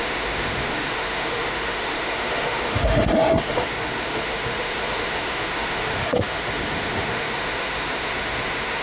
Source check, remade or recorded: remade